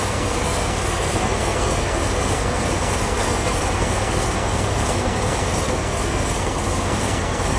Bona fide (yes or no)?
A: no